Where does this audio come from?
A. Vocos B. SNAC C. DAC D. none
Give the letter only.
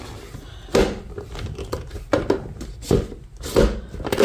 D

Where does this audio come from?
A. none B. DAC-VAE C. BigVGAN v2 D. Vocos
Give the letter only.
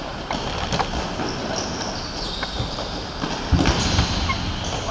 A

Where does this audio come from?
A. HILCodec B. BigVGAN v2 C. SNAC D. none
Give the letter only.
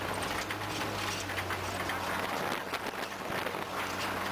D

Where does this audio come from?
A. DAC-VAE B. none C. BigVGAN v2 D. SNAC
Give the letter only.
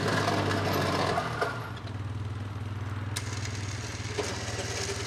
B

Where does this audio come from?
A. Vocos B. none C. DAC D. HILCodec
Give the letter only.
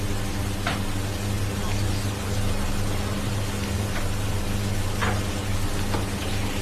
B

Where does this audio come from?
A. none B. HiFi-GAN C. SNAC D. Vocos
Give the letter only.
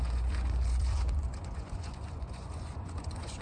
D